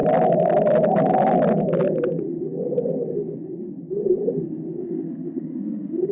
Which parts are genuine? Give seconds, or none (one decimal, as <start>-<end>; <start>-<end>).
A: 0.0-4.8